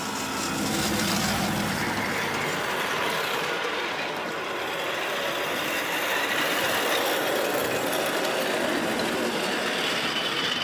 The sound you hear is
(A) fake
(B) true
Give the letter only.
B